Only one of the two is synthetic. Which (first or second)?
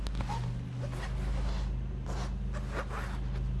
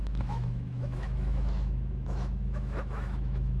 second